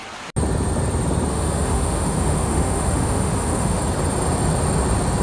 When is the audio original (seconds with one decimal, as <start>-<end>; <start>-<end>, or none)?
0.0-1.3; 3.8-5.2